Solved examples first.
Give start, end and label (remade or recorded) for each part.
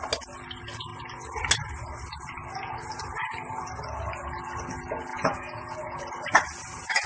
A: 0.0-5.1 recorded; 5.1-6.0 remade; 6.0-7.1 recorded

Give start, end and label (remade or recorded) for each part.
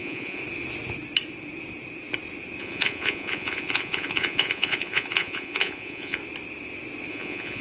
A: 0.0-0.4 remade; 0.4-2.6 recorded; 2.6-6.2 remade; 6.2-7.1 recorded; 7.1-7.6 remade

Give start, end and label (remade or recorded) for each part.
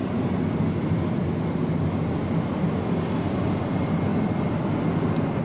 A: 0.0-5.4 recorded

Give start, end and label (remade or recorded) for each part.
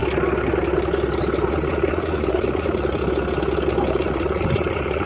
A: 0.0-1.5 recorded; 1.5-3.0 remade; 3.0-3.9 recorded; 3.9-5.1 remade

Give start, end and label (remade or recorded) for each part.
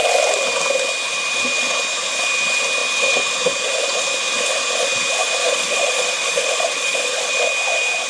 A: 0.0-5.4 recorded; 5.4-7.3 remade; 7.3-8.1 recorded